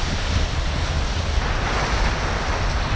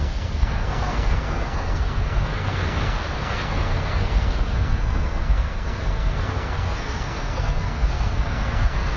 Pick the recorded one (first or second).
first